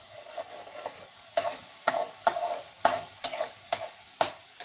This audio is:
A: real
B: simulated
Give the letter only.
B